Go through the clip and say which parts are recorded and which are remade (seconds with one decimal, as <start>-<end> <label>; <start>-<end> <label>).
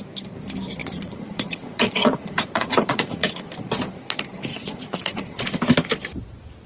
0.0-0.8 recorded; 0.8-3.5 remade; 3.5-4.5 recorded; 4.5-5.6 remade; 5.6-6.7 recorded